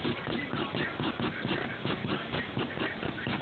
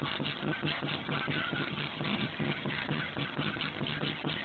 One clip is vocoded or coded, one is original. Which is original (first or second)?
first